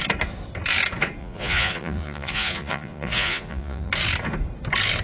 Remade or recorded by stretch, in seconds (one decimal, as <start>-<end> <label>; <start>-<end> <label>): 0.0-1.2 recorded; 1.2-3.9 remade; 3.9-5.0 recorded